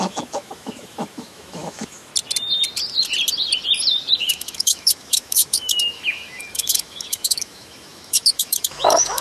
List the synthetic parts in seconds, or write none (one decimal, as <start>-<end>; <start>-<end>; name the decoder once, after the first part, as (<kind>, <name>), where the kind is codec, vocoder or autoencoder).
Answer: 0.0-2.1 (autoencoder, DAC-VAE); 4.2-9.2